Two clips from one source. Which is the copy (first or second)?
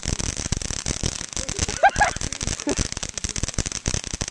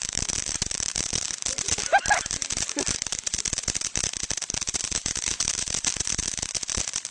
second